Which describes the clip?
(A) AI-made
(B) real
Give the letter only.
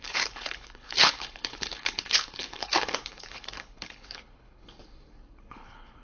A